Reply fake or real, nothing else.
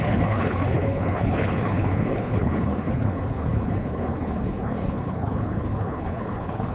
fake